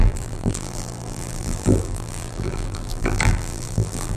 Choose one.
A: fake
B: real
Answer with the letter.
A